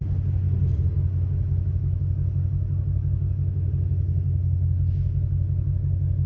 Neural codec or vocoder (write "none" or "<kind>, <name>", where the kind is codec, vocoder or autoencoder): none